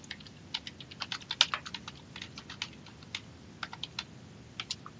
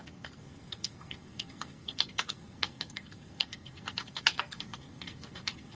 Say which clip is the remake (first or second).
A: second